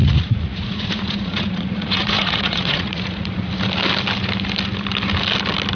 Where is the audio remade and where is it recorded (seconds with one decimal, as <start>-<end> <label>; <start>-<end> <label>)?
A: 0.0-3.5 remade; 3.5-5.8 recorded